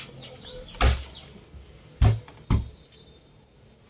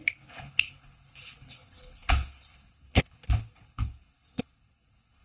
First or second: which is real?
first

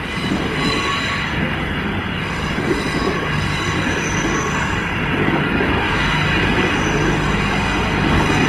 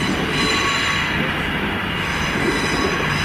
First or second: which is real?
second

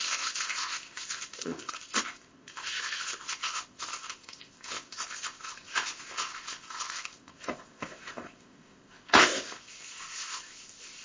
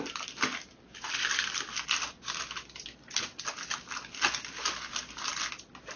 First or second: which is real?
second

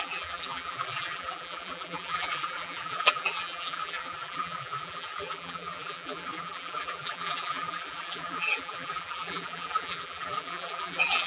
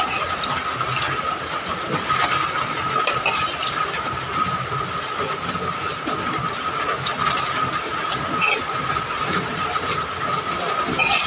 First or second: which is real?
second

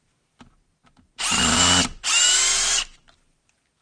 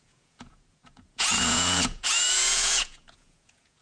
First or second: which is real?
first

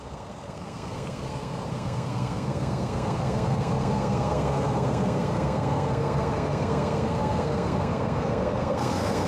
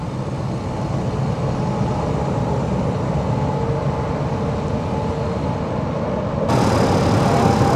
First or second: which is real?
second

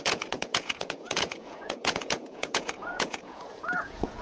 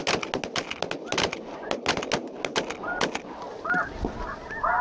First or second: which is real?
second